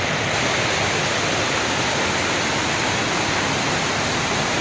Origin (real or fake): real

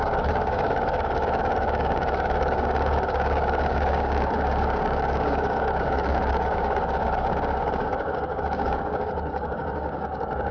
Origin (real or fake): fake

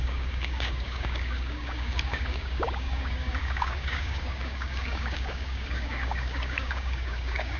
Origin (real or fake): fake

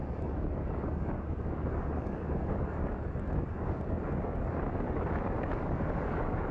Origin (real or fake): fake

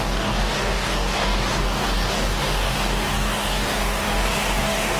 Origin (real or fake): fake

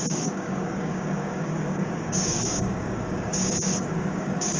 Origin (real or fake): fake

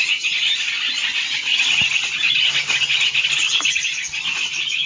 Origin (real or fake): real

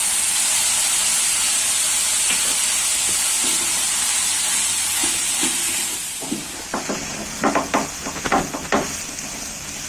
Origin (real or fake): real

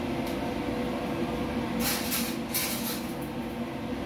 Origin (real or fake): real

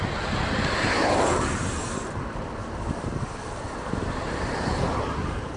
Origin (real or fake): real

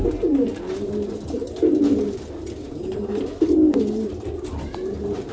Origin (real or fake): real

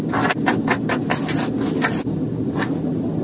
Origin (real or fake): real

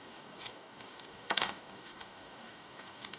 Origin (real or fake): fake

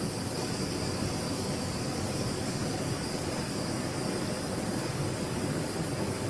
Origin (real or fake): fake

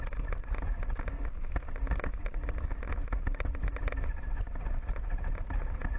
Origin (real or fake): real